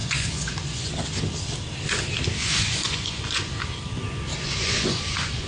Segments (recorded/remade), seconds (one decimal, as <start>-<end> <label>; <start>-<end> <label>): 0.0-0.9 remade; 0.9-2.4 recorded; 2.4-3.5 remade; 3.5-4.3 recorded; 4.3-5.5 remade